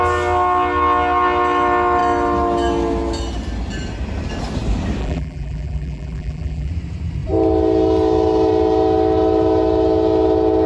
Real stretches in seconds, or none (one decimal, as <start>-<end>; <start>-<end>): 0.0-5.0; 6.7-10.7